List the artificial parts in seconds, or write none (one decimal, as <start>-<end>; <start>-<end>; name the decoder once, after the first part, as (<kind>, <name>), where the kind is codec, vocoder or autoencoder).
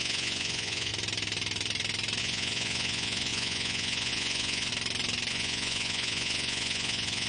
0.0-0.9 (vocoder, Vocos); 2.2-4.7; 5.3-7.3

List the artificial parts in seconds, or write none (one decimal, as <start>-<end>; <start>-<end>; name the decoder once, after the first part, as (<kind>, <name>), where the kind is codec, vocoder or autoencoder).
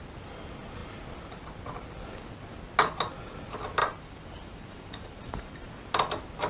3.8-5.7 (vocoder, BigVGAN v2)